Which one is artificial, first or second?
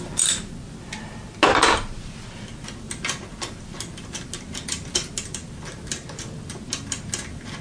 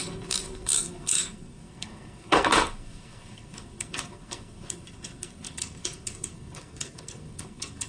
second